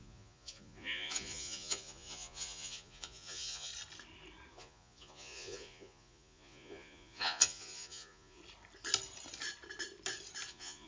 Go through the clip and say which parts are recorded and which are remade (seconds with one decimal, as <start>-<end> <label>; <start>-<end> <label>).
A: 0.0-3.7 remade; 3.7-4.5 recorded; 4.5-8.4 remade; 8.4-10.5 recorded; 10.5-10.9 remade